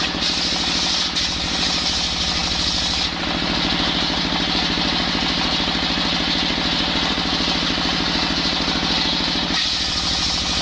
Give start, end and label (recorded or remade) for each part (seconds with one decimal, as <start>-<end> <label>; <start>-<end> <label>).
0.0-10.6 recorded